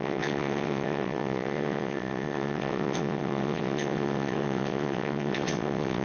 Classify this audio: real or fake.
fake